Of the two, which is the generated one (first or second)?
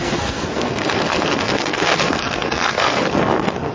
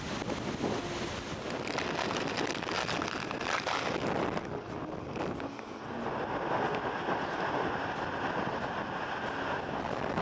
first